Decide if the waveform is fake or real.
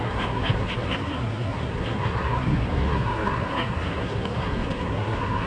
fake